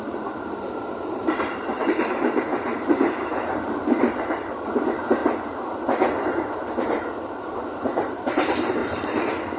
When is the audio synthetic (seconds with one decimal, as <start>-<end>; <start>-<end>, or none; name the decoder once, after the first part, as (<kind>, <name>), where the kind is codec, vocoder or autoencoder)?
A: 0.0-5.2 (vocoder, BigVGAN v2); 5.8-8.8